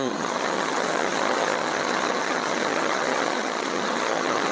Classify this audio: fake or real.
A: fake